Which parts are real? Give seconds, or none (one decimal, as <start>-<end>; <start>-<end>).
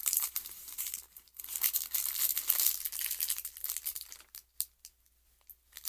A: 1.4-5.9